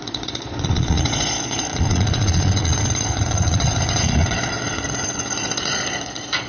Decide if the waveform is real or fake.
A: fake